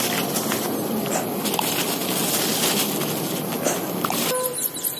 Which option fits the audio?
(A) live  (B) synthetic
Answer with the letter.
A